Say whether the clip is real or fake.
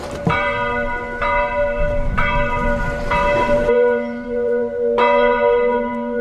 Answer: fake